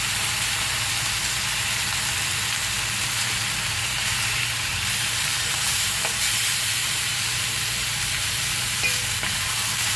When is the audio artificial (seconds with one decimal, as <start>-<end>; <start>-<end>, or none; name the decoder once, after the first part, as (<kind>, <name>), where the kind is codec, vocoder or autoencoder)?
0.0-1.2 (vocoder, BigVGAN v2); 3.0-4.7; 5.2-10.0